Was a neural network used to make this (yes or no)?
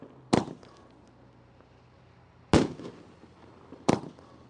no